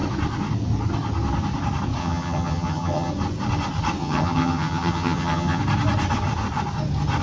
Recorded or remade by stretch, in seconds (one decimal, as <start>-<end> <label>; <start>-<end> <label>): 0.0-2.0 recorded; 2.0-3.1 remade; 3.1-4.0 recorded; 4.0-5.6 remade; 5.6-7.2 recorded